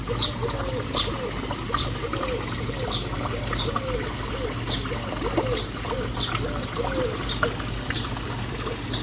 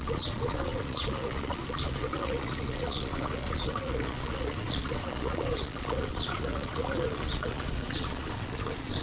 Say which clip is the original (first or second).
first